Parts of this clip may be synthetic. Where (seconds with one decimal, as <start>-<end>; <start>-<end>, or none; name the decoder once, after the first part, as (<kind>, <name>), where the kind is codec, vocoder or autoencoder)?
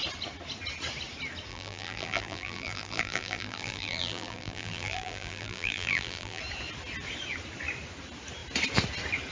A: 1.5-6.4 (vocoder, BigVGAN v2)